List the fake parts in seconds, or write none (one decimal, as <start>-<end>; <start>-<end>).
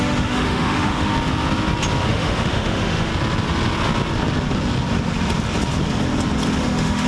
0.0-1.1; 2.1-3.1; 6.6-7.1